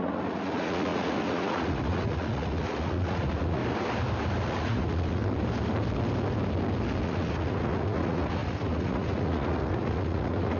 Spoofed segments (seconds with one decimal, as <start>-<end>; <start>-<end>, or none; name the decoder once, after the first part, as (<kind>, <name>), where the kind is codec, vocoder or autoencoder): 0.0-3.6 (vocoder, Vocos); 4.4-5.2; 7.0-10.6